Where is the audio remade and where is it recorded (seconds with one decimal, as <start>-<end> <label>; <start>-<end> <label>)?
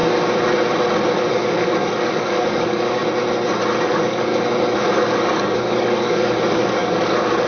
0.0-1.3 recorded; 1.3-3.0 remade; 3.0-3.8 recorded; 3.8-4.3 remade; 4.3-5.0 recorded; 5.0-7.5 remade